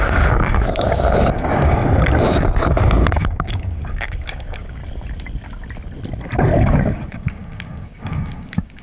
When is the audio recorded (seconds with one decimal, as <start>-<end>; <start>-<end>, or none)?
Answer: 1.8-3.2; 4.8-6.7